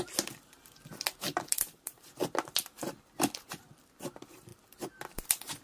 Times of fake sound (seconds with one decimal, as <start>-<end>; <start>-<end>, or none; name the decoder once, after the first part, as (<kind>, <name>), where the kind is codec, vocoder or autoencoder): none